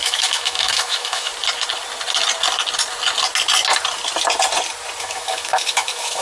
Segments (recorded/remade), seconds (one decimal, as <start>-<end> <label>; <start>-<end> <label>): 0.0-1.3 remade; 1.3-5.0 recorded; 5.0-6.2 remade